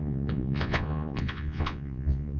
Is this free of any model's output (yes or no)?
no